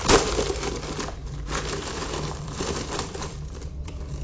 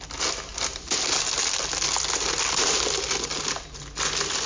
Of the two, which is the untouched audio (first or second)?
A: second